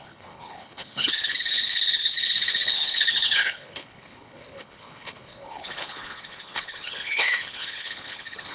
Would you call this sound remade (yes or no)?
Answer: yes